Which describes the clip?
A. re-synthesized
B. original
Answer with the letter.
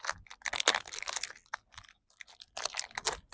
B